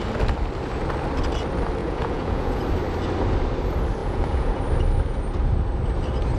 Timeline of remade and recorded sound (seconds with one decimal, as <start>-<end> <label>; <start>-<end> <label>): 0.0-1.8 recorded; 1.8-2.6 remade; 2.6-4.0 recorded; 4.0-4.6 remade; 4.6-6.4 recorded